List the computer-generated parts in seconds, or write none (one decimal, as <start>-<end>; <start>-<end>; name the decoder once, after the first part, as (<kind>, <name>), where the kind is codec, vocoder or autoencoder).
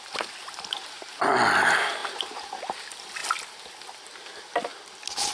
0.4-1.2 (vocoder, BigVGAN v2); 2.0-2.6